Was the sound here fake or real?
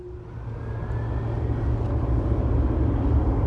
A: real